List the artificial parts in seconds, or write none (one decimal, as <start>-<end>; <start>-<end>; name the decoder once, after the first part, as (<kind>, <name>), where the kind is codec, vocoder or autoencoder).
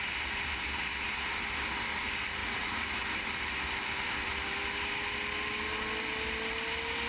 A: 2.4-2.9 (vocoder, Vocos)